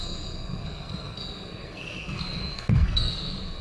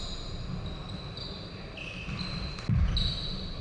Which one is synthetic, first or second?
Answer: first